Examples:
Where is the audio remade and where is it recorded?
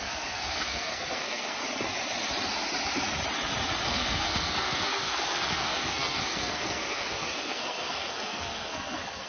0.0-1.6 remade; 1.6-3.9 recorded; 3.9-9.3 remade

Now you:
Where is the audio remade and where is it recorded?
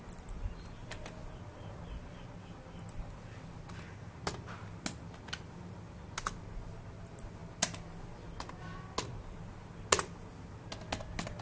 0.0-11.4 recorded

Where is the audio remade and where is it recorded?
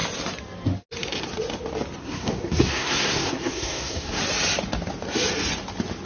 0.0-2.0 recorded; 2.0-4.2 remade; 4.2-6.1 recorded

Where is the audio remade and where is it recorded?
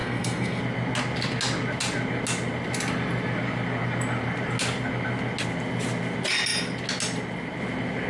0.0-0.6 remade; 0.6-8.1 recorded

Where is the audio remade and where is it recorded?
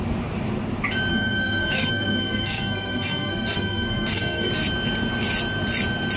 0.0-1.1 recorded; 1.1-4.5 remade; 4.5-6.2 recorded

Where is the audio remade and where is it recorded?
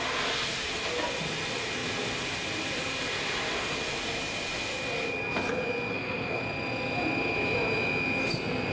0.0-5.9 recorded; 5.9-6.4 remade; 6.4-8.7 recorded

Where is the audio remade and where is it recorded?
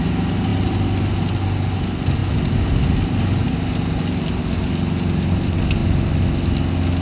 0.0-7.0 recorded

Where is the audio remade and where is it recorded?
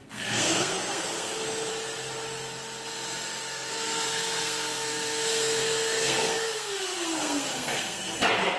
0.0-1.7 remade; 1.7-3.4 recorded; 3.4-8.6 remade